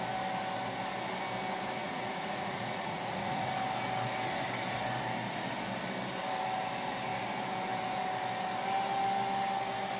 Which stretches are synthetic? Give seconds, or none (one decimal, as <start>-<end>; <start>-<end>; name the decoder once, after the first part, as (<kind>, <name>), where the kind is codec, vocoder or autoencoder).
1.8-3.5 (vocoder, Vocos)